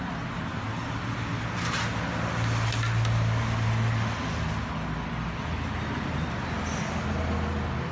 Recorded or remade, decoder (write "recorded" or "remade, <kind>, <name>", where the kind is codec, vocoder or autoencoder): recorded